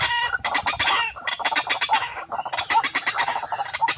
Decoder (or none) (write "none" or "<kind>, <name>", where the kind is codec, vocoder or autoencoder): none